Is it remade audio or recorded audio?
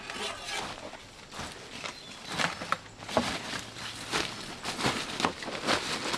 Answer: recorded